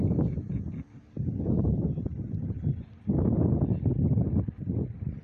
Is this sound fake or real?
fake